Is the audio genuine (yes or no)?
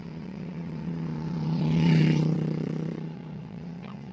no